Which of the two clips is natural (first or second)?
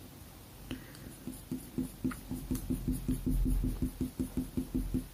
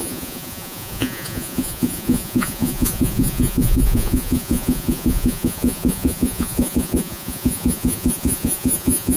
first